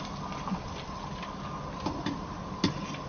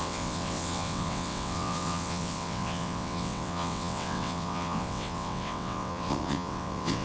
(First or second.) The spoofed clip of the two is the second